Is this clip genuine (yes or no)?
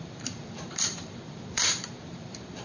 no